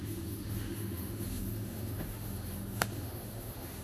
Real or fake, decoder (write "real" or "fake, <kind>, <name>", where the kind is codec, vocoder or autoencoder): fake, autoencoder, DAC-VAE